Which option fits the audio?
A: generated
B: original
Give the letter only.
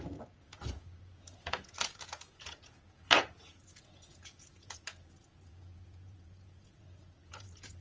A